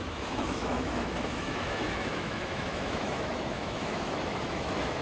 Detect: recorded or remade remade